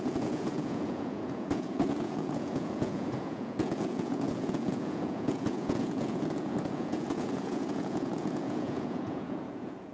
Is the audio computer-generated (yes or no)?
yes